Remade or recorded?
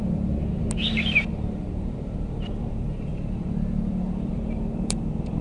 remade